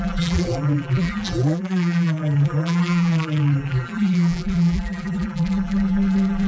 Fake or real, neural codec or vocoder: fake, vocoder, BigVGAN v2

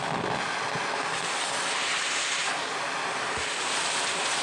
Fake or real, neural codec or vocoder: real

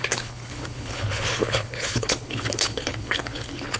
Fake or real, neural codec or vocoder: fake, codec, HILCodec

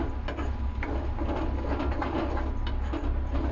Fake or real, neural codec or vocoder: real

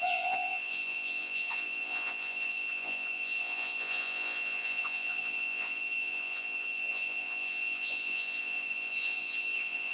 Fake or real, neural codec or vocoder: fake, vocoder, Vocos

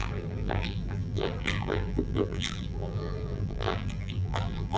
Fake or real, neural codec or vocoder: fake, vocoder, BigVGAN v2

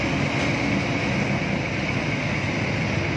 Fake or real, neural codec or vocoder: real